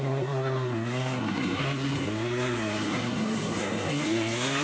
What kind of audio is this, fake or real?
fake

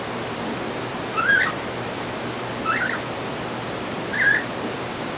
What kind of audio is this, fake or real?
real